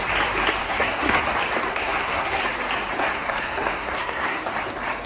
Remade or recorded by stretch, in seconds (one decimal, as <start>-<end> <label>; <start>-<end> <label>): 0.0-0.6 recorded; 0.6-1.2 remade; 1.2-1.7 recorded; 1.7-2.4 remade; 2.4-3.0 recorded; 3.0-4.4 remade; 4.4-5.1 recorded